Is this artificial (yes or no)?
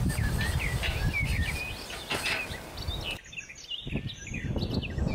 no